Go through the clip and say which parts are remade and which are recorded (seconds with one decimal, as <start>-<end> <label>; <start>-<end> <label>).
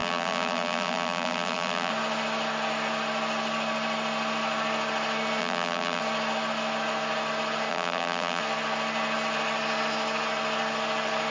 0.0-1.9 remade; 1.9-5.4 recorded; 5.4-6.0 remade; 6.0-7.7 recorded; 7.7-8.4 remade; 8.4-11.3 recorded